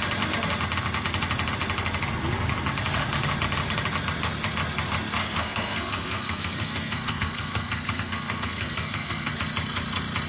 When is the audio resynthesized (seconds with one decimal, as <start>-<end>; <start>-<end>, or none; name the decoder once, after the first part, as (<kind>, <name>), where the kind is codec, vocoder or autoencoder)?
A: 5.2-9.3 (codec, SNAC)